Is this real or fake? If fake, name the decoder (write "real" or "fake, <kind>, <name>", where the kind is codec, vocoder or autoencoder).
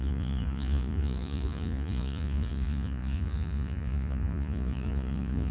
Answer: fake, vocoder, Vocos